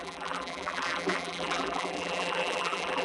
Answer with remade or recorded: remade